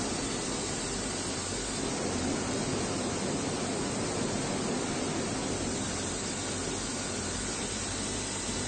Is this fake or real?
real